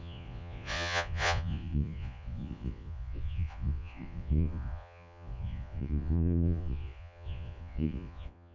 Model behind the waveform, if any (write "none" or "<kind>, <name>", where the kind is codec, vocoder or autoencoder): vocoder, Vocos